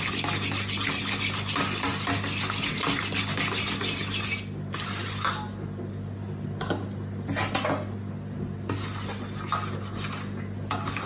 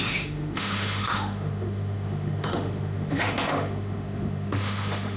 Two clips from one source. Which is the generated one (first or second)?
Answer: second